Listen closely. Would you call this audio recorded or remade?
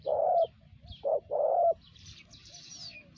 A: remade